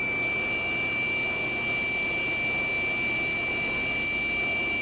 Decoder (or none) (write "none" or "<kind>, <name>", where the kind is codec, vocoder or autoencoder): none